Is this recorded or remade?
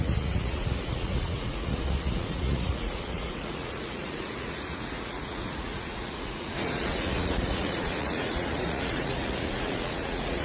remade